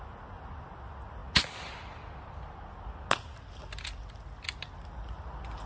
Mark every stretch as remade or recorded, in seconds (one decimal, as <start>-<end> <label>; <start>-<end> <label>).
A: 0.0-5.7 recorded